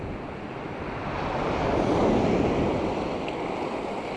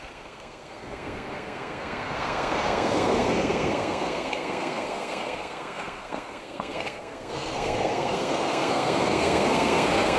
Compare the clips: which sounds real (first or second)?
first